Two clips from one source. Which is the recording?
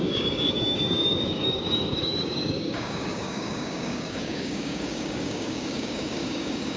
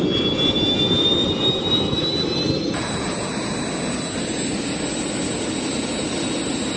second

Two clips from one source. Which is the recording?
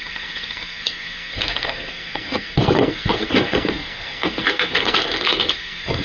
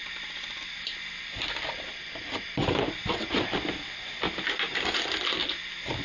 second